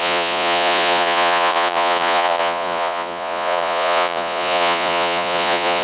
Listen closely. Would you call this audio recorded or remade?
remade